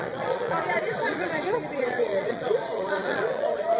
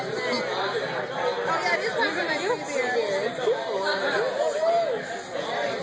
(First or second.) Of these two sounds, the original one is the second